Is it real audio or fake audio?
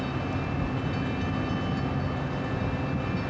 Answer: real